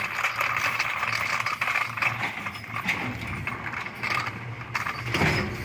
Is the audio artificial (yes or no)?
no